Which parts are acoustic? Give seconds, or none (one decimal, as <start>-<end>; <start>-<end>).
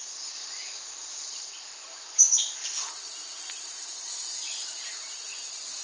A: 0.4-1.4